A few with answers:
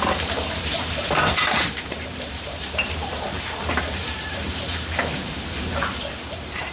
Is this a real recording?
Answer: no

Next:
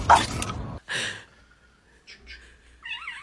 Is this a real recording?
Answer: yes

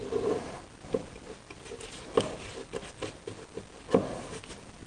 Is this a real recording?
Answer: yes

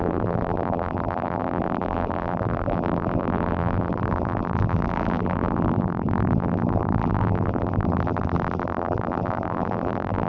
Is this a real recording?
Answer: no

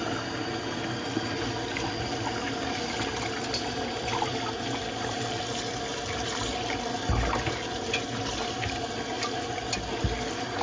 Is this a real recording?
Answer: yes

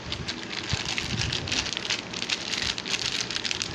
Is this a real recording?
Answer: yes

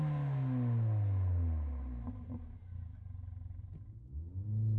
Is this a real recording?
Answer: yes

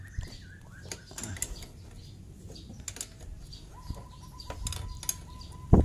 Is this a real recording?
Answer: yes